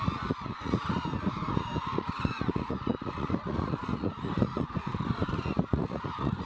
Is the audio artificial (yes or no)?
yes